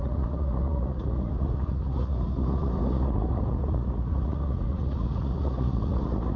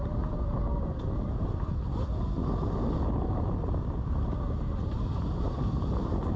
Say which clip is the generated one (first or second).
first